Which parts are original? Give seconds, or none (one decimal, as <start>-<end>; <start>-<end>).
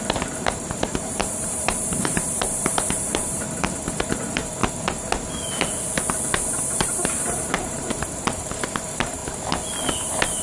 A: 4.6-6.6; 9.2-10.0